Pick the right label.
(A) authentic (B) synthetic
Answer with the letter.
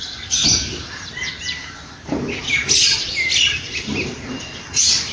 A